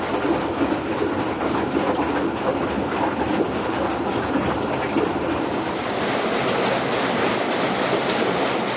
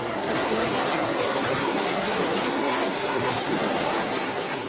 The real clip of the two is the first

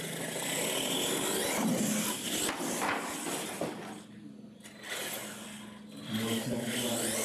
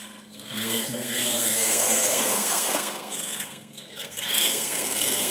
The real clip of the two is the first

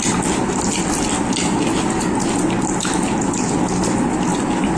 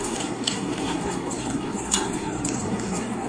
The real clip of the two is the first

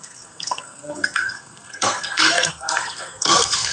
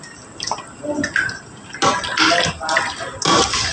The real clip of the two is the second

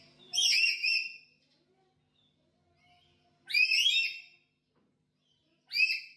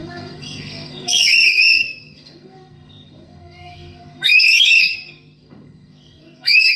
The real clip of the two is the first